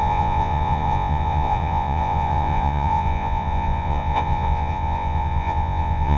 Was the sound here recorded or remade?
remade